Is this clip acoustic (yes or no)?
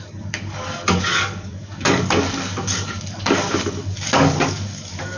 no